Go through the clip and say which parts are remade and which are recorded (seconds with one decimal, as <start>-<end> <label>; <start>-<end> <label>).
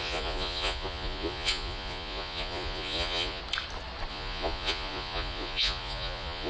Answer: 0.0-3.4 remade; 3.4-4.1 recorded; 4.1-6.5 remade